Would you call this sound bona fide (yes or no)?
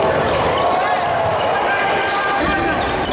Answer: yes